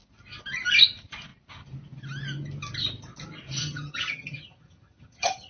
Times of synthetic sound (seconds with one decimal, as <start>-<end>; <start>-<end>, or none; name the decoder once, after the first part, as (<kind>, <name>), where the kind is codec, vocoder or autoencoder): 3.6-5.5 (vocoder, HiFi-GAN)

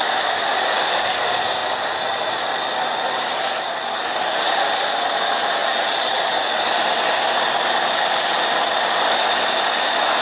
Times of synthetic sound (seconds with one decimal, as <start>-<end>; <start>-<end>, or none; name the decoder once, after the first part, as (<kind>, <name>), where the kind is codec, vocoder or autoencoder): none

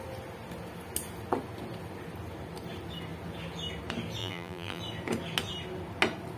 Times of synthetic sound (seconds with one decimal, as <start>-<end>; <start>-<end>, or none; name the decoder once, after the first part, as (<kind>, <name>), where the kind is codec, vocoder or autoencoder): 4.2-4.8 (vocoder, BigVGAN v2)